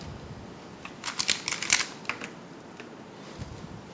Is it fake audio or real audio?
real